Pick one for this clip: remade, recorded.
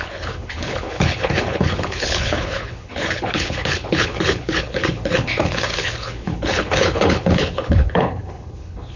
remade